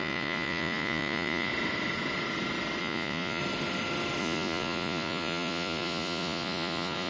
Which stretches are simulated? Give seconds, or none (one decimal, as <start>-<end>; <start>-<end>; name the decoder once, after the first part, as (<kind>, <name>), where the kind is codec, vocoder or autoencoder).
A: 0.0-1.5 (vocoder, Vocos); 2.8-3.4; 4.2-7.1